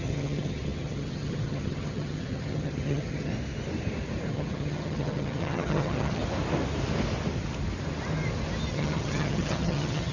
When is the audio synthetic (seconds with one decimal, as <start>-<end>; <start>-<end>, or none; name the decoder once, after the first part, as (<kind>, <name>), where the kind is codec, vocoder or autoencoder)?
0.0-3.3 (vocoder, HiFi-GAN); 4.3-6.2; 8.7-10.1